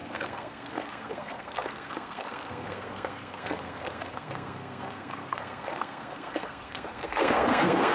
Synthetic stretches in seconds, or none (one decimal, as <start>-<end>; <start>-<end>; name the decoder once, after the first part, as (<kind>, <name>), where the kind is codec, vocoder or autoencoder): 0.0-7.9 (codec, SNAC)

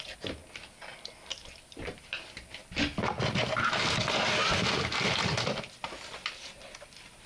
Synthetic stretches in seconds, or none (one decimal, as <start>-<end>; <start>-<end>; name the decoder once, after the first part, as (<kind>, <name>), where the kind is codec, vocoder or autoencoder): none

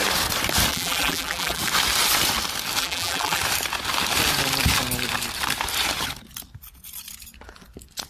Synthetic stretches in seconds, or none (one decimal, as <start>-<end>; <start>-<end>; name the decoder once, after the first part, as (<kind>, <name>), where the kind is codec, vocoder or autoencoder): 0.7-1.6 (vocoder, BigVGAN v2); 2.8-3.4

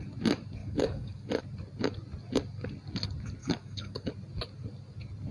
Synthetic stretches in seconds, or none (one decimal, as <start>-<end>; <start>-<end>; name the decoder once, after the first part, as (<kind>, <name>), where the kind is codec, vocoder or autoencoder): 0.6-1.4 (codec, DAC); 3.4-4.1